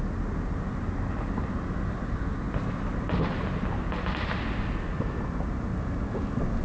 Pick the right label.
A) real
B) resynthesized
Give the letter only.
A